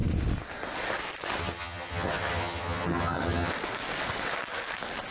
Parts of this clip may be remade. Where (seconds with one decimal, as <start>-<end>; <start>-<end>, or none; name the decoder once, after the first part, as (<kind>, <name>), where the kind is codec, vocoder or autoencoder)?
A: 1.4-3.5 (vocoder, HiFi-GAN)